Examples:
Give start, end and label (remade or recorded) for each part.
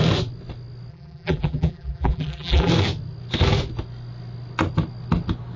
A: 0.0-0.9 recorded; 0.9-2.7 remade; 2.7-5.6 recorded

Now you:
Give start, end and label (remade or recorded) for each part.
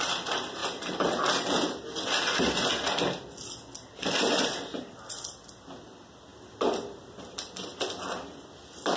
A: 0.0-0.6 remade; 0.6-3.9 recorded; 3.9-9.0 remade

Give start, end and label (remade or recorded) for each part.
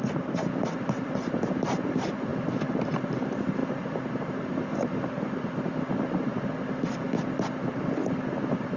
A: 0.0-8.8 recorded